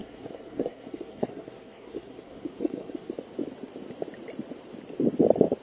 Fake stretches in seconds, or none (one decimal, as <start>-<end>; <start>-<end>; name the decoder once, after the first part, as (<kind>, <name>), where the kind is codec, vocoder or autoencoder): 0.0-3.1 (codec, SNAC)